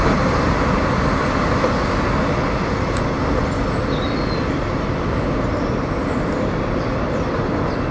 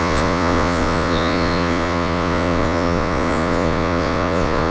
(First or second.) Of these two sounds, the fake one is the second